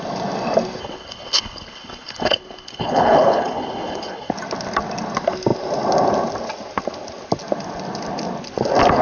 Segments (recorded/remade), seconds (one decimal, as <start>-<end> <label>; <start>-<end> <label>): 0.0-0.8 recorded; 0.8-4.3 remade; 4.3-9.0 recorded